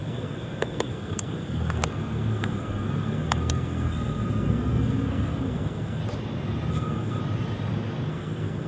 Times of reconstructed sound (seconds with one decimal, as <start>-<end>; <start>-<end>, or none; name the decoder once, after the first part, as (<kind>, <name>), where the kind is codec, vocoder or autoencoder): 0.0-6.0 (codec, SNAC); 6.7-7.2; 8.1-8.7